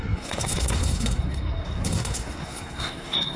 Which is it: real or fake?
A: fake